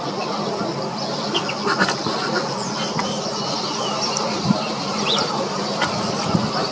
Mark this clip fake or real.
real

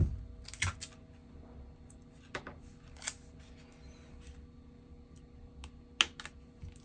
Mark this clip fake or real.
real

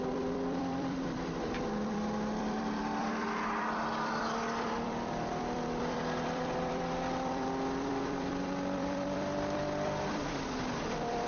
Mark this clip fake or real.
fake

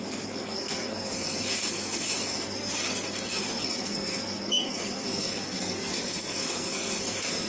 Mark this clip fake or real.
fake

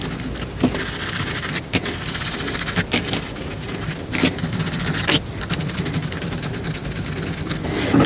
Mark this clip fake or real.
real